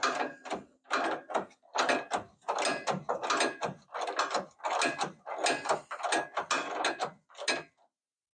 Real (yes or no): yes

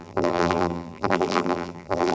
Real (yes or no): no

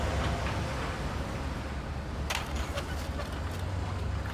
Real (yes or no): yes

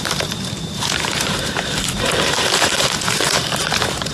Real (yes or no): no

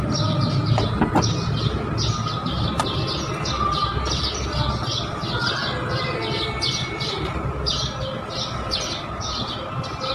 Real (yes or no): yes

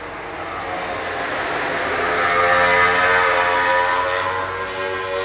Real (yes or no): yes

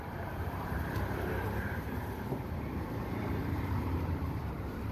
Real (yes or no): no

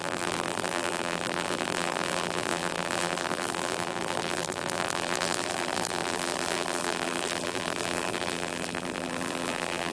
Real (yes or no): no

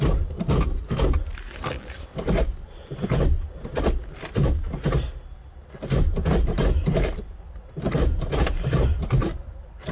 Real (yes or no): yes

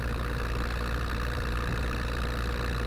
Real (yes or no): no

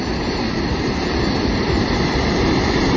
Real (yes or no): no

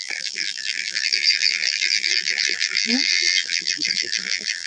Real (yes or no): no